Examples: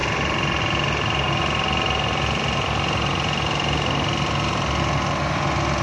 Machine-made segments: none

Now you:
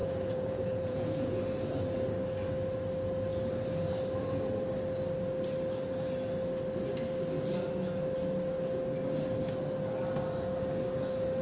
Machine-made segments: 0.0-1.3

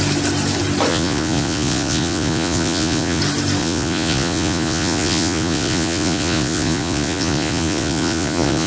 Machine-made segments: 0.9-3.2; 3.6-8.7

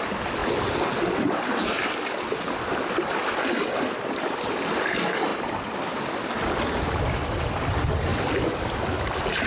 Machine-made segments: none

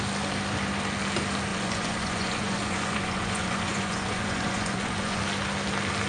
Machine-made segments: 1.5-5.2

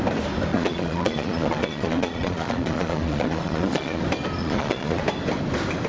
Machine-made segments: 0.5-4.0; 4.4-5.0

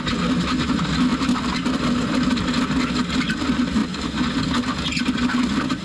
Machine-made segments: none